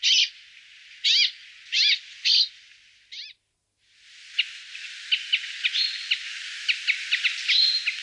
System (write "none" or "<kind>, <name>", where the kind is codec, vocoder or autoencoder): none